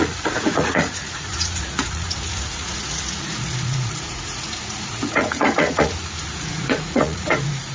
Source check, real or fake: fake